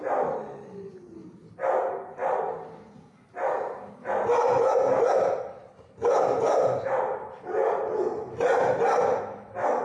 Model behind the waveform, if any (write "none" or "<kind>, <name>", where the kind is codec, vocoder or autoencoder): none